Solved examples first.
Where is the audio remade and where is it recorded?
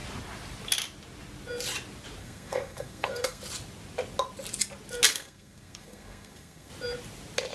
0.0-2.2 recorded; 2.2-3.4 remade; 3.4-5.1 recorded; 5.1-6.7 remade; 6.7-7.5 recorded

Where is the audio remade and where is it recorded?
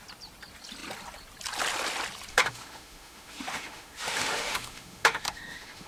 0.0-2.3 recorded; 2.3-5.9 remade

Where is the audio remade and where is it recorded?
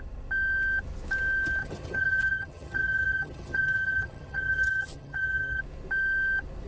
0.0-1.6 recorded; 1.6-5.6 remade; 5.6-6.7 recorded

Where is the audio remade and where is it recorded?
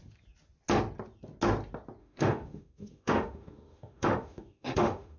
0.0-2.0 recorded; 2.0-5.2 remade